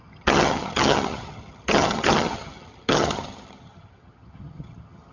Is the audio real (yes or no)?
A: no